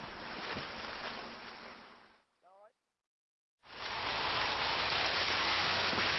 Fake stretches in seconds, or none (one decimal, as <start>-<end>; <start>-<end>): 5.4-6.2